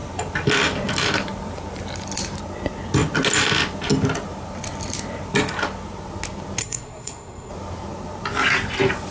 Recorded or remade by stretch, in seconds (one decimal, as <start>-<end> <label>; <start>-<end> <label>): 0.0-6.6 recorded; 6.6-7.5 remade; 7.5-9.1 recorded

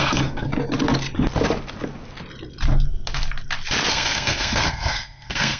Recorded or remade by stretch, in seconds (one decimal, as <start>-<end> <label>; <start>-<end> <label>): 0.0-0.5 remade; 0.5-3.9 recorded; 3.9-5.6 remade

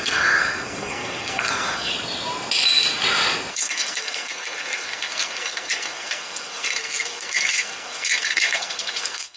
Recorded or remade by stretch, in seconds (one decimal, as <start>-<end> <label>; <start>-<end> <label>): 0.0-1.9 remade; 1.9-3.5 recorded; 3.5-9.4 remade

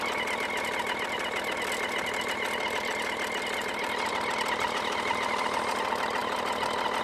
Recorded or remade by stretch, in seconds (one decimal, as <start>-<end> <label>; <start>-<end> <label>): 0.0-7.0 recorded

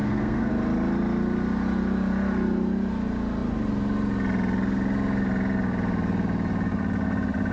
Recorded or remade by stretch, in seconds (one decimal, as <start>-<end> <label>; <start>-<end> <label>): 0.0-0.5 remade; 0.5-7.5 recorded

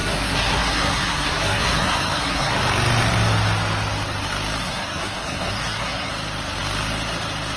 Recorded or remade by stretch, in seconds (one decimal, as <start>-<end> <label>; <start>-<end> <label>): 0.0-2.5 remade; 2.5-4.6 recorded; 4.6-6.1 remade; 6.1-7.6 recorded

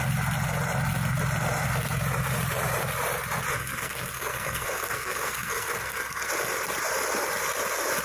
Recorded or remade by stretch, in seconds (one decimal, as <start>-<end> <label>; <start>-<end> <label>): 0.0-3.5 recorded; 3.5-6.3 remade; 6.3-8.0 recorded

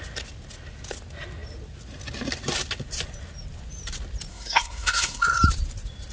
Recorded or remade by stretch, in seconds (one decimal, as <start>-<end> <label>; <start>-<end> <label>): 0.0-4.3 recorded; 4.3-5.4 remade; 5.4-6.1 recorded